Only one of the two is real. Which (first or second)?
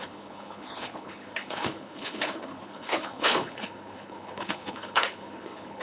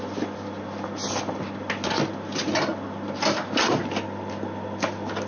second